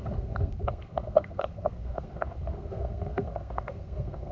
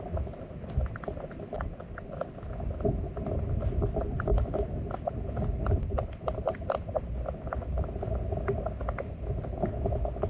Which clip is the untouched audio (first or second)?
second